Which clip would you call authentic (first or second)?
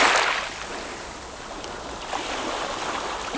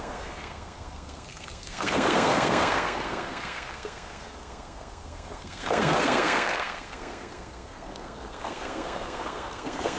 first